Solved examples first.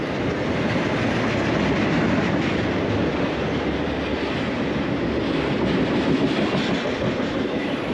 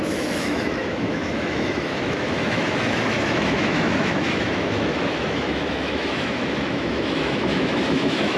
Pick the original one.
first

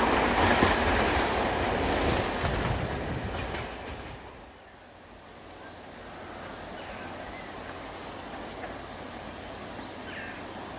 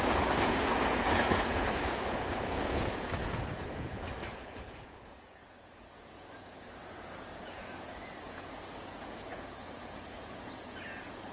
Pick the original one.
first